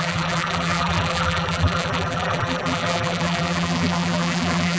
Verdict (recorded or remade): remade